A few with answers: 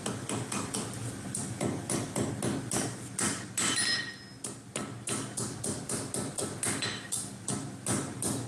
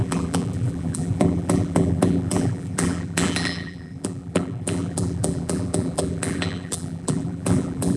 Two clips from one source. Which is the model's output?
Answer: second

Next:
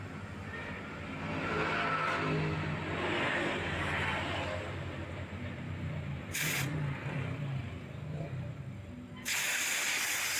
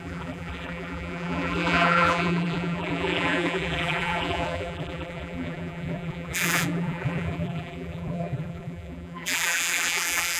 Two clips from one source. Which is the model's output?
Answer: second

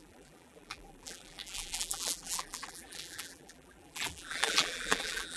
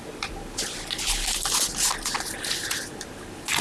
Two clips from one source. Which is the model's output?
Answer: first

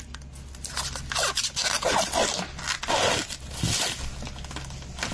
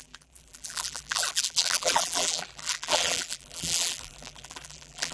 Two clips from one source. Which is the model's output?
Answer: second